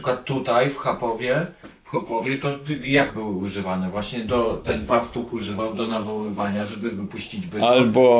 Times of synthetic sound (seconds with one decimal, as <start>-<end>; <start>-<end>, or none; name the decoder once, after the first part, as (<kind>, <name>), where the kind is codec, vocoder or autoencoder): 1.7-3.1 (codec, SNAC); 4.6-7.1

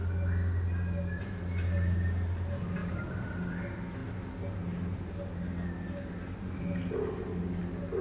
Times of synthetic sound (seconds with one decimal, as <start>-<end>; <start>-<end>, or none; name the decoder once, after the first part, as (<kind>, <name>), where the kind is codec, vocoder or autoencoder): none

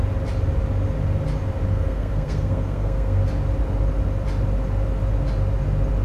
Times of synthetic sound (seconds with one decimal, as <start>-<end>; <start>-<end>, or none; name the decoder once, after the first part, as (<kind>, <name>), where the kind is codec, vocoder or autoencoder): 1.7-3.2 (codec, SNAC)

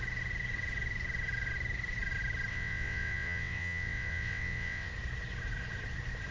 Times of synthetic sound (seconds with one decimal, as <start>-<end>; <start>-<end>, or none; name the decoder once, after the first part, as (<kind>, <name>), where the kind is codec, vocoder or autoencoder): 2.5-4.9 (vocoder, WaveNeXt)

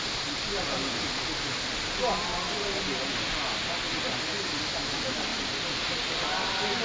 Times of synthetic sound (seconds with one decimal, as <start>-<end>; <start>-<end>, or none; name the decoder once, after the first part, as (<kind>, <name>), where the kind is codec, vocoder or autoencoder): none